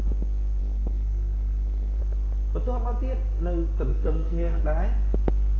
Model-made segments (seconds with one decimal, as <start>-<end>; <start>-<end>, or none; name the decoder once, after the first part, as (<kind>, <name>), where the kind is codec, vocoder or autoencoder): 0.6-2.0 (codec, SNAC); 3.9-4.6